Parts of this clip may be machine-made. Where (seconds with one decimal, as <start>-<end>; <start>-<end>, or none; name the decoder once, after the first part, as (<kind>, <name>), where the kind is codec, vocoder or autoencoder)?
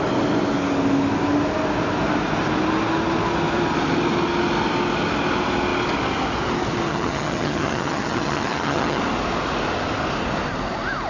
6.9-9.0 (vocoder, HiFi-GAN)